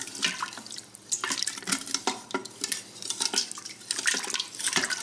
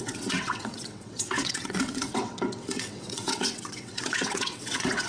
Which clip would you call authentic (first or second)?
first